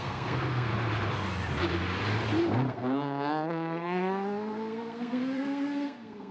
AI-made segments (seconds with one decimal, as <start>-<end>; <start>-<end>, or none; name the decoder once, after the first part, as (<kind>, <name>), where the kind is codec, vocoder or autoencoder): 0.0-0.7 (codec, SNAC); 2.7-6.3